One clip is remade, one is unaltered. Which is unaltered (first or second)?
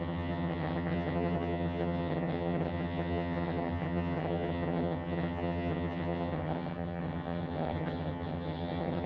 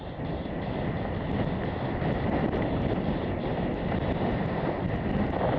second